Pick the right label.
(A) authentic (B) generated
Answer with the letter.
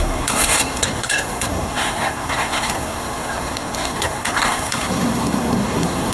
B